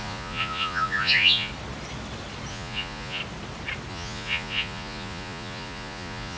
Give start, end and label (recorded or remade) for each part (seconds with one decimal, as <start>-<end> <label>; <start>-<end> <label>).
0.0-1.5 remade; 1.5-2.5 recorded; 2.5-3.2 remade; 3.2-3.9 recorded; 3.9-6.4 remade